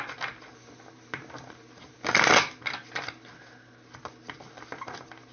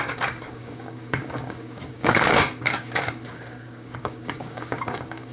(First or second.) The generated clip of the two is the second